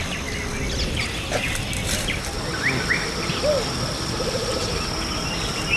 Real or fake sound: real